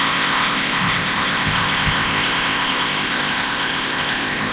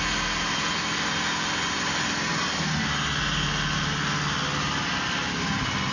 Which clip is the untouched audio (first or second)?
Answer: second